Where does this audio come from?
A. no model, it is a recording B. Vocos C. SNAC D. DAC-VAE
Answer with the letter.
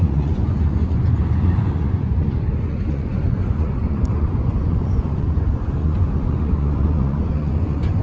B